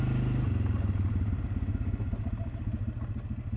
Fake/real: real